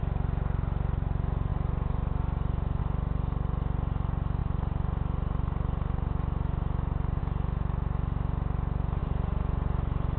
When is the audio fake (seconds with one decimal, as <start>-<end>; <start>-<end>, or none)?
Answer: 1.5-2.8; 4.4-7.2; 9.0-10.2